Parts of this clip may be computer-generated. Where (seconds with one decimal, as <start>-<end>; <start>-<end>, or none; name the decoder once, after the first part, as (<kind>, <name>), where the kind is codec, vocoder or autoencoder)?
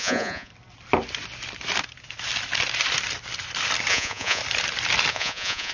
0.0-0.5 (vocoder, Vocos); 3.9-4.4; 5.1-5.7